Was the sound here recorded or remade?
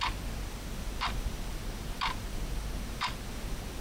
recorded